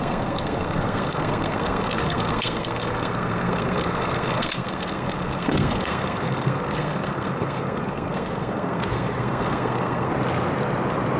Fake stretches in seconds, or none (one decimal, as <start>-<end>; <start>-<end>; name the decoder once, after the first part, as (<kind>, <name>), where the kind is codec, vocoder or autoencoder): 0.0-10.1 (codec, SNAC)